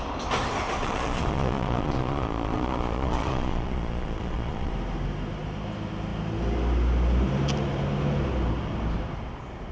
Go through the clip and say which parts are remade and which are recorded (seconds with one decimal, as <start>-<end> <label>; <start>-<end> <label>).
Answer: 0.0-0.8 recorded; 0.8-4.7 remade; 4.7-9.7 recorded